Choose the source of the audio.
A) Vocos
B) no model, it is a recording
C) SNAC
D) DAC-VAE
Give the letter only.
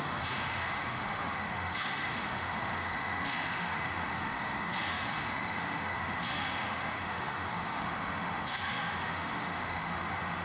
D